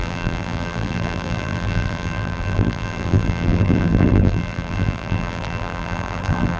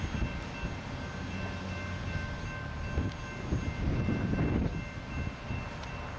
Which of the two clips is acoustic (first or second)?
second